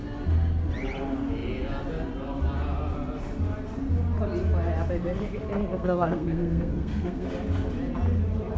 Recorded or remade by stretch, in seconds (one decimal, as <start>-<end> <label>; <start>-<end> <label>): 0.0-5.7 recorded; 5.7-7.3 remade; 7.3-8.6 recorded